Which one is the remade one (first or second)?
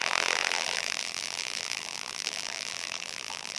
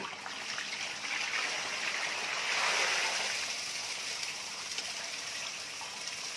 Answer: first